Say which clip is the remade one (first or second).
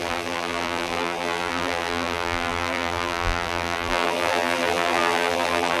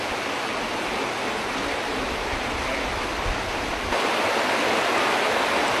first